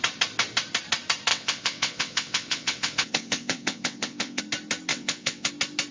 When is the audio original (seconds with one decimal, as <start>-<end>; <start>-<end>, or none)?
0.0-1.3; 4.4-4.9; 5.5-5.9